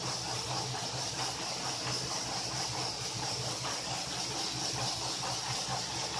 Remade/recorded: recorded